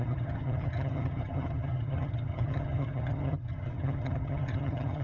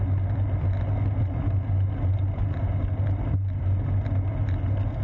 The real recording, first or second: second